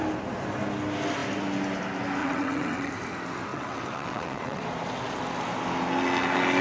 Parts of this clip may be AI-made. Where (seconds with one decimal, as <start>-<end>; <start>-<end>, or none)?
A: 2.2-2.9; 3.5-4.6

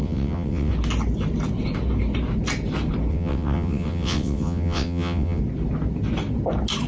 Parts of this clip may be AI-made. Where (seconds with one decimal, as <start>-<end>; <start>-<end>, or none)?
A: 0.0-0.7; 3.1-5.4

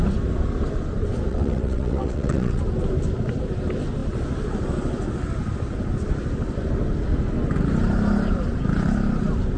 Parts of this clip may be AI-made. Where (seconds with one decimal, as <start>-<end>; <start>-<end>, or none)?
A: 1.3-2.6

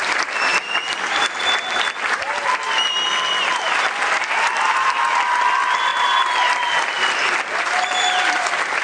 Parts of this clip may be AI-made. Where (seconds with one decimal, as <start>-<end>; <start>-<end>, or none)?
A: none

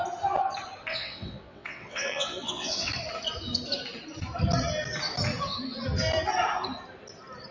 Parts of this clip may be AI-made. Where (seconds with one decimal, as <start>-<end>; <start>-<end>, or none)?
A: 0.9-2.9

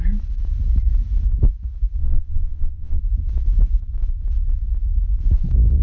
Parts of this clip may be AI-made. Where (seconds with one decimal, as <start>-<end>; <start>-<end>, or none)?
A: 2.0-3.0

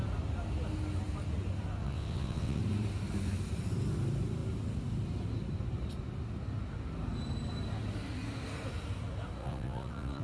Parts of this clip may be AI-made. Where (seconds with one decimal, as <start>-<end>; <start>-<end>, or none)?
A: 1.8-2.6; 9.4-10.2